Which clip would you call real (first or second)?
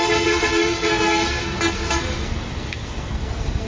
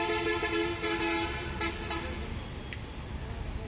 second